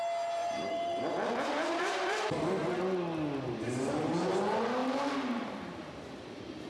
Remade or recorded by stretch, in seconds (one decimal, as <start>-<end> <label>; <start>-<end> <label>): 0.0-0.4 recorded; 0.4-2.8 remade; 2.8-4.8 recorded; 4.8-5.5 remade; 5.5-6.7 recorded